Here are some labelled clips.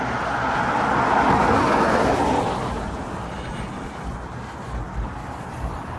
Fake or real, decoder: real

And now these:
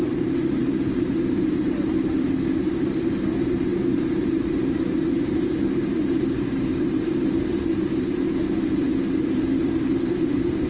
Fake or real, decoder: fake, vocoder, BigVGAN v2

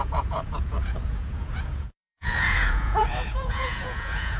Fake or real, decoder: fake, vocoder, Vocos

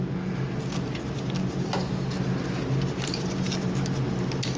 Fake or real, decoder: real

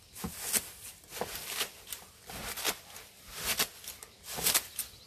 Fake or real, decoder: real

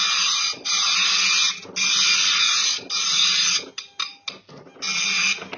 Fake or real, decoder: real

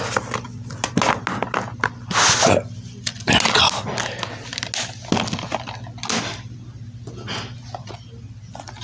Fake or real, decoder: real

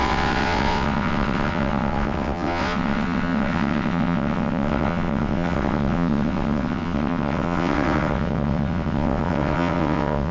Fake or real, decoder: fake, vocoder, WaveNeXt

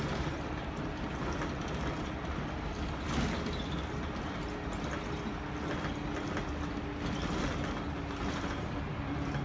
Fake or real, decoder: real